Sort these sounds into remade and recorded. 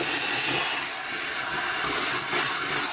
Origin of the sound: recorded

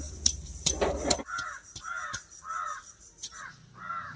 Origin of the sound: remade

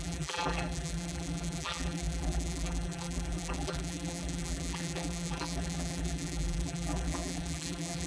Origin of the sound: remade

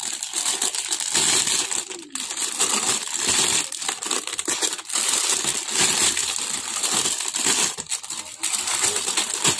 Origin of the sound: recorded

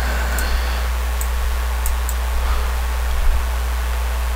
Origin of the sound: recorded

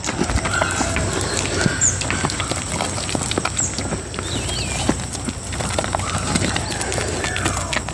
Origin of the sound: recorded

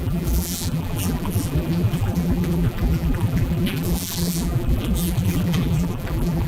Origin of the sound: remade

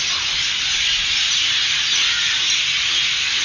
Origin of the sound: recorded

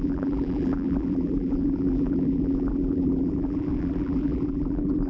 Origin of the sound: remade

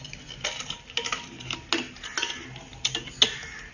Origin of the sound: recorded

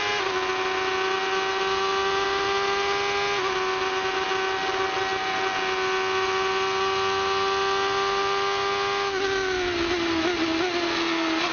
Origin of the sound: recorded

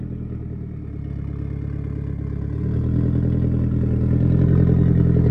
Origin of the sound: recorded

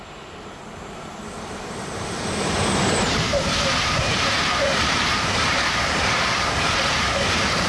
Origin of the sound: remade